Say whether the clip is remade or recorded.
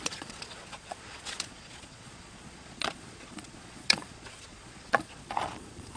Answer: remade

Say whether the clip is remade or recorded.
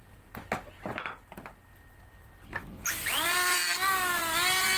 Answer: recorded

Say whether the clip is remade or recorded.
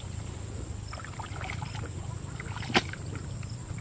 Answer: recorded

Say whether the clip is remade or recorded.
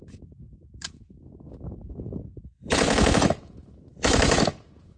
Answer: remade